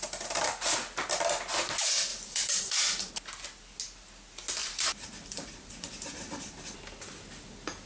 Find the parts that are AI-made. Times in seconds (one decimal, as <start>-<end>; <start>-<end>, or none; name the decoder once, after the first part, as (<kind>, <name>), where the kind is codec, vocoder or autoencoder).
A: 2.1-3.1 (vocoder, BigVGAN v2); 4.6-6.6